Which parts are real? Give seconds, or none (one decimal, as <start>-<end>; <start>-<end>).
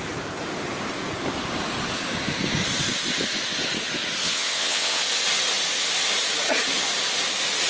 0.0-4.2; 5.0-7.7